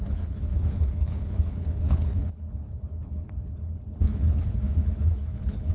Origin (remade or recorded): remade